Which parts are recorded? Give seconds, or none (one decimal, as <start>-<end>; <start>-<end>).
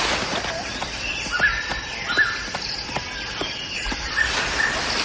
0.0-5.0